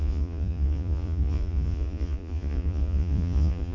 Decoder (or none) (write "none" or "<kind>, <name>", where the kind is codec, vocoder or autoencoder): vocoder, Vocos